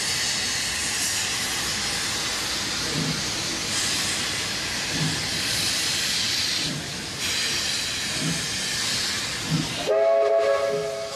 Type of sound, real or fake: real